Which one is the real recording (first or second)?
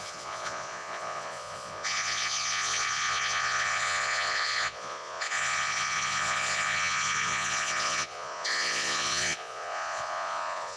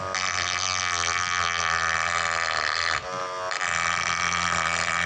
second